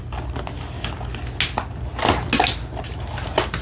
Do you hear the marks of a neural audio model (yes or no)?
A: no